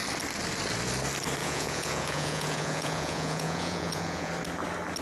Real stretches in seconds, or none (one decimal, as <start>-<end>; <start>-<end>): 0.0-1.4; 4.3-5.0